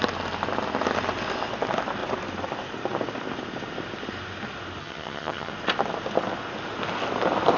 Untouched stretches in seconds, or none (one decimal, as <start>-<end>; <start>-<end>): 0.0-4.8; 5.5-7.6